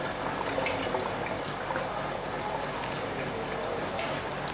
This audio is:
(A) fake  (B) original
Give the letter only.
B